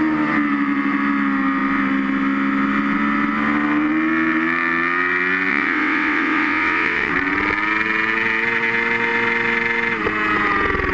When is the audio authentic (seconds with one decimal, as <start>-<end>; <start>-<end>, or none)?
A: 0.0-5.5; 7.1-10.9